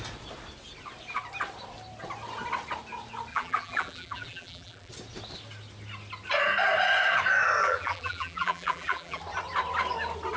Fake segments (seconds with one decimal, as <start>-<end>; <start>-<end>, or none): 3.3-4.9; 7.6-9.2